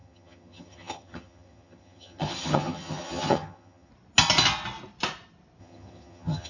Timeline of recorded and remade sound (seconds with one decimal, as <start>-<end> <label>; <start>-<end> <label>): 0.0-3.9 remade; 3.9-5.6 recorded; 5.6-6.5 remade